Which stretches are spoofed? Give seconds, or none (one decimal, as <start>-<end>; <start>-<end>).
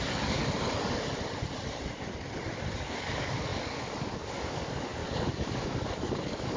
0.0-0.4; 2.7-6.6